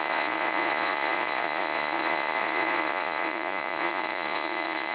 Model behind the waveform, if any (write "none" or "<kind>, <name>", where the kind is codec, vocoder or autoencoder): vocoder, Vocos